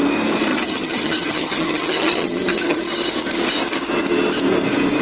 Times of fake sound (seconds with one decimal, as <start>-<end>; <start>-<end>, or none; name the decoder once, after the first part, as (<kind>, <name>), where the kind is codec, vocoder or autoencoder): 0.5-2.8 (vocoder, HiFi-GAN)